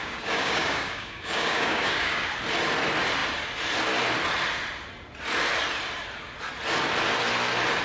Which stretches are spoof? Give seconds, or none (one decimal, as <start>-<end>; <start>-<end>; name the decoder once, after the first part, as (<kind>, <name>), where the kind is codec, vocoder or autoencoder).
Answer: 0.0-2.3 (codec, DAC)